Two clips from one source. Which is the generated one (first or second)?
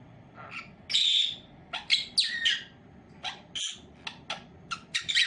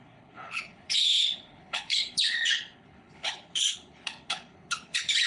second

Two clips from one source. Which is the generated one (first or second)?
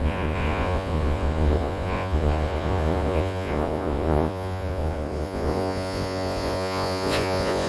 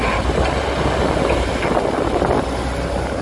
first